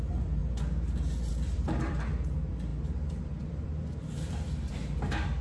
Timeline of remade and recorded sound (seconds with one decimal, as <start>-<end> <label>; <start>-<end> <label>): 0.0-0.4 remade; 0.4-1.3 recorded; 1.3-2.7 remade; 2.7-3.2 recorded; 3.2-5.4 remade